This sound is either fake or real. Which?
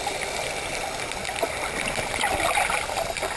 real